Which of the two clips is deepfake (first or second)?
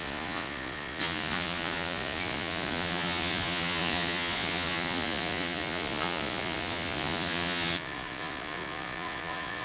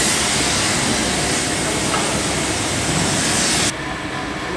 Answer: first